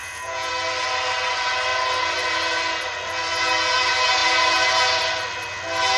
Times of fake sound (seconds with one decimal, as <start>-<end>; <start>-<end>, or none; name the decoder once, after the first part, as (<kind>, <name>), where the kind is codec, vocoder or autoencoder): 0.0-0.5 (vocoder, Vocos)